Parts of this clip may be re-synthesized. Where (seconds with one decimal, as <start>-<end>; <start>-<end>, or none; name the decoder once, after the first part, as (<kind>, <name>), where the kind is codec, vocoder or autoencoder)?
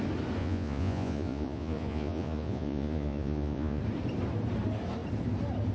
0.4-3.8 (vocoder, Vocos)